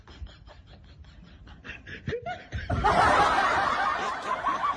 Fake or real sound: real